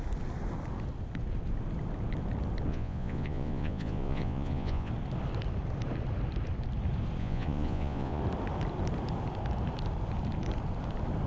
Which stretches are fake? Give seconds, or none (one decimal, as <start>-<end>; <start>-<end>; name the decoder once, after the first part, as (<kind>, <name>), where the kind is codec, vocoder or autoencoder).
2.7-4.9 (vocoder, Vocos); 7.2-8.2